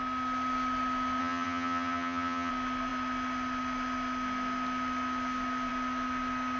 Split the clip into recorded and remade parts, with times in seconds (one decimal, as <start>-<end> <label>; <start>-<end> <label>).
0.0-1.2 recorded; 1.2-2.5 remade; 2.5-6.6 recorded